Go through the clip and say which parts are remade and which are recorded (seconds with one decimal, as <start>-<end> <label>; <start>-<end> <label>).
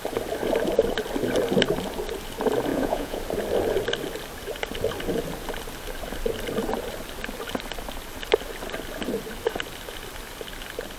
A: 0.0-2.7 recorded; 2.7-3.2 remade; 3.2-11.0 recorded